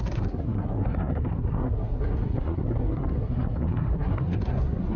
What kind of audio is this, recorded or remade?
remade